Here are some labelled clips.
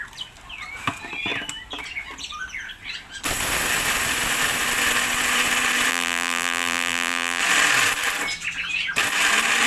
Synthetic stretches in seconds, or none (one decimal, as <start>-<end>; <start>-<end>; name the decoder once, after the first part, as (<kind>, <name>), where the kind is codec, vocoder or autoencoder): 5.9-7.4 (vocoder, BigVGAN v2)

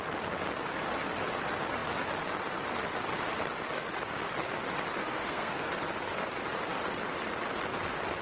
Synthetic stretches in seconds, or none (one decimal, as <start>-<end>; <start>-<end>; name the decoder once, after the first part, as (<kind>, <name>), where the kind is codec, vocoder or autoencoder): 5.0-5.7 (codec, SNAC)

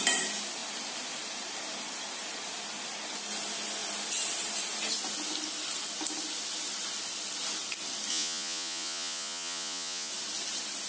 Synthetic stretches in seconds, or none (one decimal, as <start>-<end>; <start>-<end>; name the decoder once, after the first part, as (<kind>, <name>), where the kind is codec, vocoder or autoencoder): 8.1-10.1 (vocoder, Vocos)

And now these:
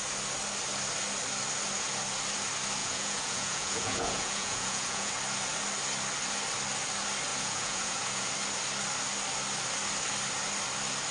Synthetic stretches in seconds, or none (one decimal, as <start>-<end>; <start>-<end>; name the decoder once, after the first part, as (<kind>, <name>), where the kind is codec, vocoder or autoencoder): 2.8-5.1 (vocoder, Vocos); 7.3-8.3